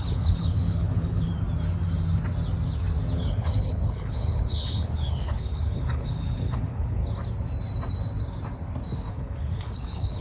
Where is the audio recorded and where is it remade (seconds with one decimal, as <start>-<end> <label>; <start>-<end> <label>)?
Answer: 0.0-1.3 remade; 1.3-3.2 recorded; 3.2-7.0 remade; 7.0-9.1 recorded; 9.1-10.2 remade

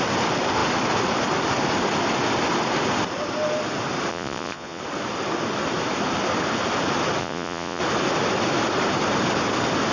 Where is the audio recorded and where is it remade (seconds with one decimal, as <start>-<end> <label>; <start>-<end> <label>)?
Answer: 0.0-4.1 recorded; 4.1-4.8 remade; 4.8-7.2 recorded; 7.2-7.8 remade; 7.8-9.9 recorded

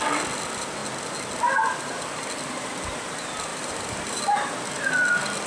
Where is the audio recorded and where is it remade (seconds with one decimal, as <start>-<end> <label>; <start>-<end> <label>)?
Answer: 0.0-3.5 recorded; 3.5-4.2 remade; 4.2-5.5 recorded

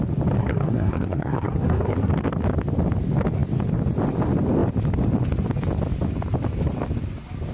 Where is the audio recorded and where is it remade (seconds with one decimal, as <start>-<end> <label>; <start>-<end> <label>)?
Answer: 0.0-0.4 recorded; 0.4-2.1 remade; 2.1-7.5 recorded